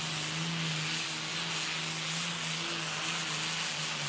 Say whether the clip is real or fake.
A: real